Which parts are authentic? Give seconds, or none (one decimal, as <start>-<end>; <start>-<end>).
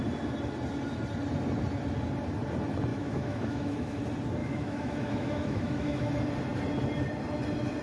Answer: 0.0-2.9; 4.0-4.4; 6.1-7.8